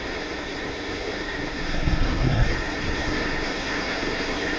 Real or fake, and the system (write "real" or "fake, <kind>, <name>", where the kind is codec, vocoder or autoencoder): fake, codec, SNAC